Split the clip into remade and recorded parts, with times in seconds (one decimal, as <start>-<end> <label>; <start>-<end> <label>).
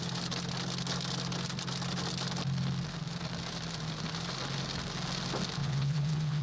0.0-5.6 recorded; 5.6-6.4 remade